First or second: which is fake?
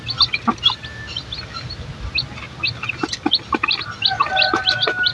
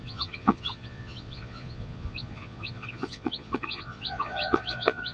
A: second